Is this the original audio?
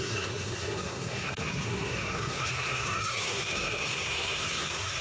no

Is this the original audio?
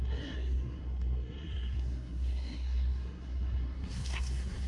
no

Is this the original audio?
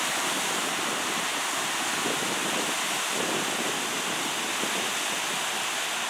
yes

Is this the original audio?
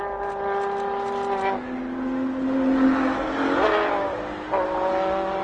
yes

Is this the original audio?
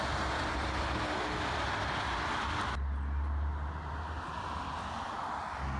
yes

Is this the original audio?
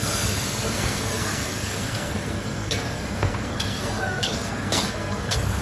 no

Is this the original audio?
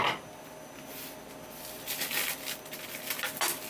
yes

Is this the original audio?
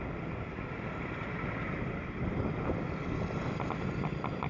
yes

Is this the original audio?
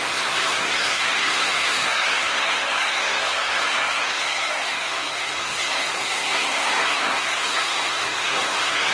no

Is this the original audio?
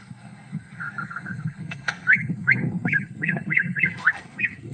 no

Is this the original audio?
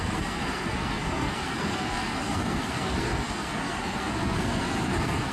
no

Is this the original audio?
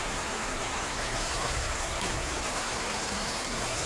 no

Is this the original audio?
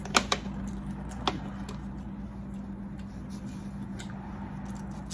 yes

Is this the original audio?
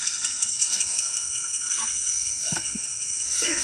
no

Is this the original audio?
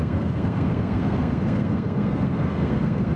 no